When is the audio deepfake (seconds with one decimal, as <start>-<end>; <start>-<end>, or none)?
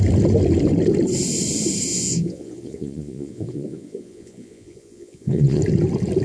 1.9-5.6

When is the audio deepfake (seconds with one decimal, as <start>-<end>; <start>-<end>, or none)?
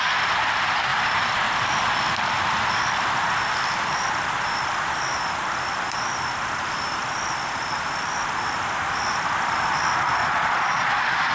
10.2-11.3